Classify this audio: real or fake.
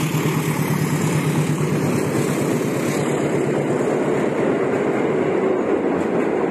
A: real